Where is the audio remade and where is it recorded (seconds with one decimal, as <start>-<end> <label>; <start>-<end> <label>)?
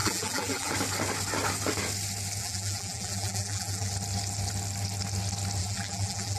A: 0.0-0.7 remade; 0.7-2.4 recorded; 2.4-3.9 remade; 3.9-5.6 recorded; 5.6-6.4 remade